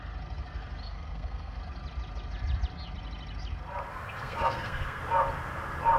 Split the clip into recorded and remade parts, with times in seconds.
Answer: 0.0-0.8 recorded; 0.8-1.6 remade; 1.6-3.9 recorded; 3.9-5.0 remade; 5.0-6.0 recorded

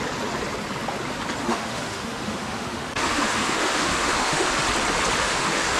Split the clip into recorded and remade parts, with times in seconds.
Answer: 0.0-1.4 recorded; 1.4-4.5 remade; 4.5-5.2 recorded; 5.2-5.8 remade

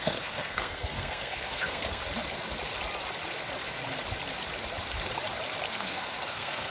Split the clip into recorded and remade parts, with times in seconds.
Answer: 0.0-2.0 remade; 2.0-5.7 recorded; 5.7-6.7 remade